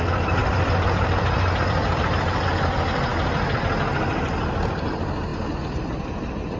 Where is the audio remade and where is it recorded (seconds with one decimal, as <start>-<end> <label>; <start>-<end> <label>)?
0.0-6.6 recorded

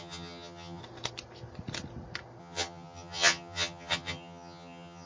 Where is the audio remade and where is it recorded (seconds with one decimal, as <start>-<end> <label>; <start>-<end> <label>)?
0.0-0.8 remade; 0.8-2.4 recorded; 2.4-5.1 remade

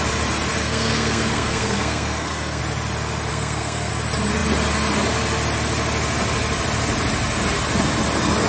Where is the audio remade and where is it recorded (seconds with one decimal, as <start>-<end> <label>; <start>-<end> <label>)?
0.0-0.6 recorded; 0.6-2.6 remade; 2.6-3.3 recorded; 3.3-3.9 remade; 3.9-8.5 recorded

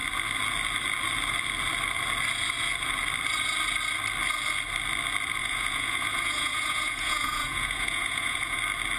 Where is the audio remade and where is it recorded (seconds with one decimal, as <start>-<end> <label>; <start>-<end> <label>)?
0.0-5.4 recorded; 5.4-8.6 remade; 8.6-9.0 recorded